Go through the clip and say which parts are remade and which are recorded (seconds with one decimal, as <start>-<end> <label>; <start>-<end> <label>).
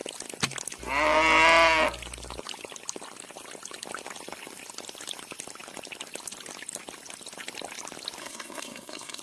0.0-8.2 recorded; 8.2-9.2 remade